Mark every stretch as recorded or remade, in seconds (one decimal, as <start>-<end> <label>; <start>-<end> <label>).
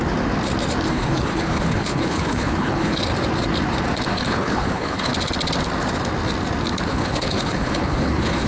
0.0-0.9 recorded; 0.9-3.0 remade; 3.0-4.1 recorded; 4.1-5.1 remade; 5.1-6.9 recorded; 6.9-8.5 remade